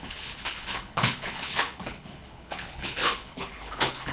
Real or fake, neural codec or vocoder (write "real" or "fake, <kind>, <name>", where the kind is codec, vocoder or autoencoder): fake, codec, HILCodec